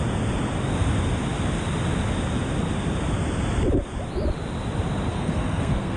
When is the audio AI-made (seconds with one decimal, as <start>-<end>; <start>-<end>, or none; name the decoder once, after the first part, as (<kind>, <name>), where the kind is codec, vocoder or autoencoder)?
5.1-6.0 (codec, SNAC)